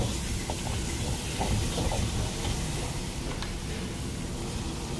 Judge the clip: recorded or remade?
recorded